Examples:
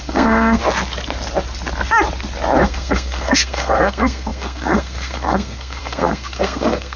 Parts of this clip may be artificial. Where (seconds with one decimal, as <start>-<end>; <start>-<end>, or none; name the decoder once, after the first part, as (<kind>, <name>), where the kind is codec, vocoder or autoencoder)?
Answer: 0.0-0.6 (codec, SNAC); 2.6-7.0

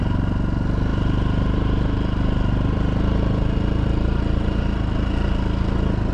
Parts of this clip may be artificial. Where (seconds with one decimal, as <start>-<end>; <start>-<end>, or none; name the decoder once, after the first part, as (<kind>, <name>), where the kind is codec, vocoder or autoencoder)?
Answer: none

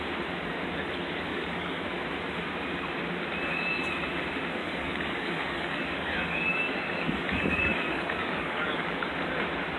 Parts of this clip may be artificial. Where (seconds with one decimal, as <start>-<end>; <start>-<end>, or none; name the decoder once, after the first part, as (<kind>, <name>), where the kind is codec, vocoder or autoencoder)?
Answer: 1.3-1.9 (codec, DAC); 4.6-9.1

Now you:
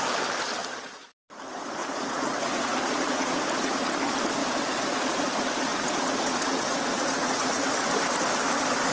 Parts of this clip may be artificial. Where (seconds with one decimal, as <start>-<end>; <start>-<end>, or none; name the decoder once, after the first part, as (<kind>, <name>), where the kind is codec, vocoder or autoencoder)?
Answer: 1.8-3.8 (vocoder, Vocos); 5.7-7.7